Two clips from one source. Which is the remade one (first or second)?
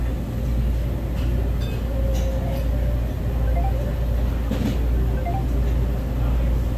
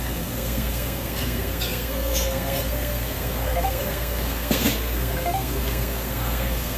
second